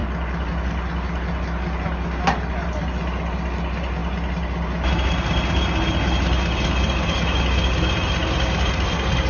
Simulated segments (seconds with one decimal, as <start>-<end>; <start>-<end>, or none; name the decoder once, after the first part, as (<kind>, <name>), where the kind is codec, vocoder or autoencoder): none